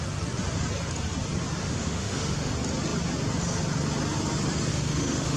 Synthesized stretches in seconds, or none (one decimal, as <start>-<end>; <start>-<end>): 1.6-2.5; 4.7-5.4